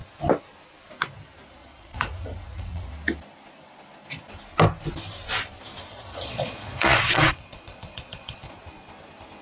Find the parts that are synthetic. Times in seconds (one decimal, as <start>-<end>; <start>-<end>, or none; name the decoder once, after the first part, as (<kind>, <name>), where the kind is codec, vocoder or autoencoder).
1.6-2.9 (vocoder, Vocos); 5.9-8.6